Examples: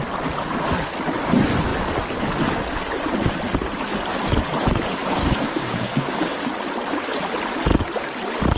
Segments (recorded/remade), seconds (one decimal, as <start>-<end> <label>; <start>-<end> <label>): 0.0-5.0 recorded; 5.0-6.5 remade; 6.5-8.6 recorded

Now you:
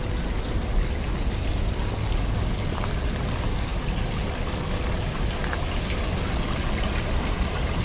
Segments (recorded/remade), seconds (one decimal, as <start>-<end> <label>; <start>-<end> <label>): 0.0-7.8 recorded

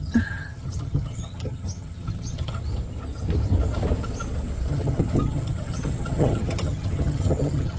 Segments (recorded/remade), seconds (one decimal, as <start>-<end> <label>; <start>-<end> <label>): 0.0-2.6 remade; 2.6-4.7 recorded; 4.7-7.8 remade

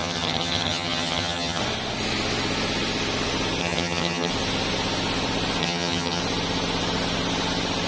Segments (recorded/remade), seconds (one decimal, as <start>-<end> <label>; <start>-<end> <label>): 0.0-1.6 remade; 1.6-3.6 recorded; 3.6-4.3 remade; 4.3-5.6 recorded; 5.6-6.2 remade; 6.2-7.9 recorded

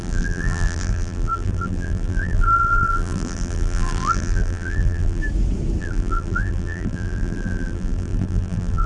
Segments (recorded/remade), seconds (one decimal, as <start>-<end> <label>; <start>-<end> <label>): 0.0-5.2 remade; 5.2-5.8 recorded; 5.8-8.9 remade

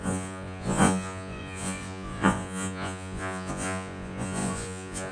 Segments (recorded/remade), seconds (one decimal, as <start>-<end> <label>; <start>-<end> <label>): 0.0-5.1 remade